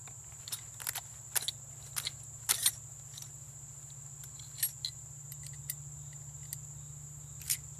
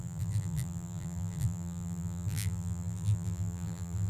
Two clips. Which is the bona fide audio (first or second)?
first